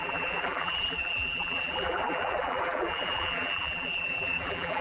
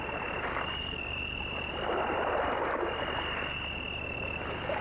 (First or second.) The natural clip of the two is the second